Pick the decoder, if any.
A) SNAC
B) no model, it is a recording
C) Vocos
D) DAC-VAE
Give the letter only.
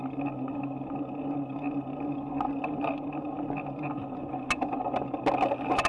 B